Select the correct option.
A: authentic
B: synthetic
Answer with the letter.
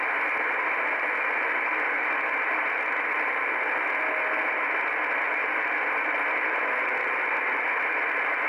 A